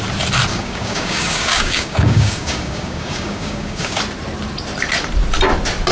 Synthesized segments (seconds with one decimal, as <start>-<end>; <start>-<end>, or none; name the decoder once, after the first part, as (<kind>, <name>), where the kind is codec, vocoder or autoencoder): 0.5-4.0 (codec, DAC)